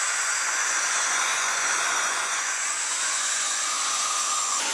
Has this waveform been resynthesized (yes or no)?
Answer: yes